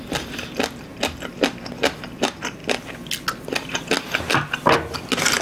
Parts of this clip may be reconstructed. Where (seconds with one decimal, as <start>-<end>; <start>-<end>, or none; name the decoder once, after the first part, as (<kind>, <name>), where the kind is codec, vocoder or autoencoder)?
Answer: none